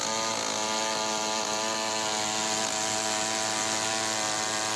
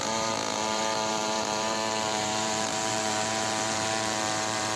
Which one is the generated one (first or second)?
second